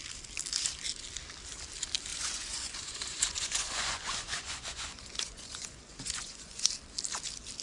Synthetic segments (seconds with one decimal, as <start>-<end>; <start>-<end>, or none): 2.1-6.7